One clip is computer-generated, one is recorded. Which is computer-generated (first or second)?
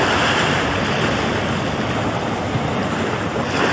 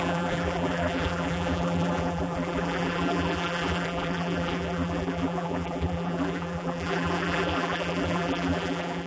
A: second